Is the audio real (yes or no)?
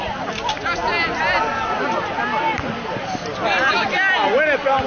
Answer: yes